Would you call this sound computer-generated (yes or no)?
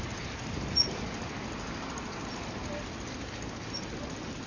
no